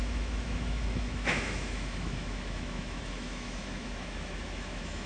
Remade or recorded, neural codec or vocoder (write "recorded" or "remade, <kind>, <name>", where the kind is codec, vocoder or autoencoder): remade, autoencoder, DAC-VAE